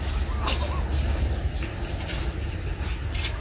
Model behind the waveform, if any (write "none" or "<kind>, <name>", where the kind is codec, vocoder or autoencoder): none